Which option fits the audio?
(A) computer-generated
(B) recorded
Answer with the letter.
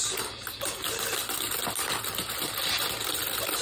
B